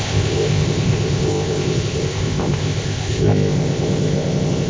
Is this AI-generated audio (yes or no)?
yes